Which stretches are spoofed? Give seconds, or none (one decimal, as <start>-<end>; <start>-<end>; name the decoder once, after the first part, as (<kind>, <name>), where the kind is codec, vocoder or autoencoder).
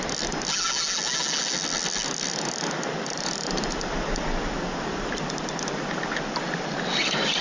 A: none